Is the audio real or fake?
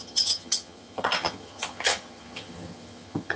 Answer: fake